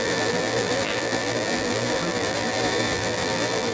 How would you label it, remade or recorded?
remade